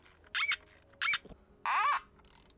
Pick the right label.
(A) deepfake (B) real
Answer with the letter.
B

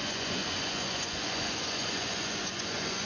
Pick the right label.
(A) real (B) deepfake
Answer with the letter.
B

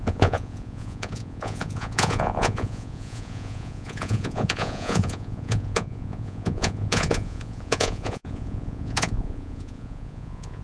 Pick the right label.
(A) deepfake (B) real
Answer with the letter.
A